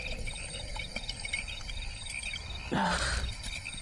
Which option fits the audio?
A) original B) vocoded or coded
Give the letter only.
A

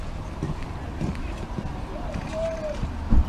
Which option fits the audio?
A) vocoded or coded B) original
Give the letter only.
B